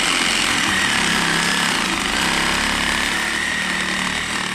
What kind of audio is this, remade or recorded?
recorded